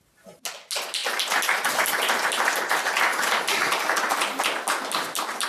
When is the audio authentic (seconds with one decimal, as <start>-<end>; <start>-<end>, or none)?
0.0-3.1; 3.7-5.5